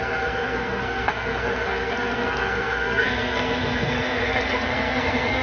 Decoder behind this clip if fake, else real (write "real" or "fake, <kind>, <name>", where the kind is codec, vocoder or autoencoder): fake, codec, SNAC